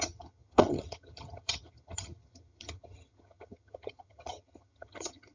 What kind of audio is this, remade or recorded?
remade